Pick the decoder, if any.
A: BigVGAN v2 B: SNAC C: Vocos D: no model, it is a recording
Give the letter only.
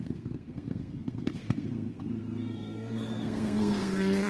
B